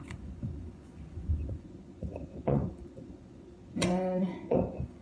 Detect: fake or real fake